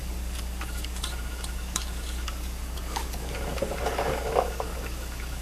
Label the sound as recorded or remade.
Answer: remade